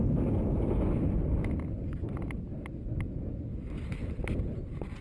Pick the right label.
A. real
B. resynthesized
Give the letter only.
A